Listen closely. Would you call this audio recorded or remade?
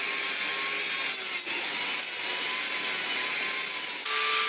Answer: recorded